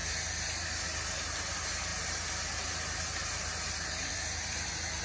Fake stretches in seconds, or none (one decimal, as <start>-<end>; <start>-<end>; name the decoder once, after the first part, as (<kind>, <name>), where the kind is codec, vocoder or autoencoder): none